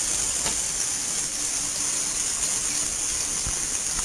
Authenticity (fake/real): real